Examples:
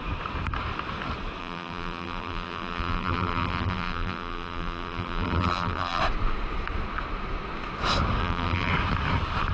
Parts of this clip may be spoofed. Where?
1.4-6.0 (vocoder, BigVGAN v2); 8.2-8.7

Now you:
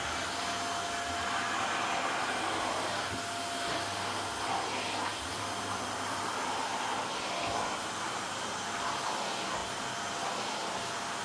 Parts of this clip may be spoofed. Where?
5.1-7.1 (vocoder, BigVGAN v2)

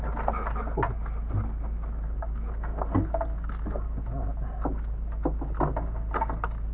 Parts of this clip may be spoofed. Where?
none